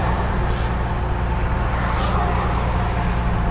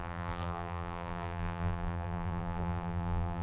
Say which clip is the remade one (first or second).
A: second